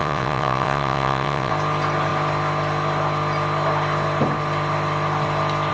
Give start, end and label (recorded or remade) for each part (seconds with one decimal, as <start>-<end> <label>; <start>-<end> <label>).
0.0-1.5 remade; 1.5-5.7 recorded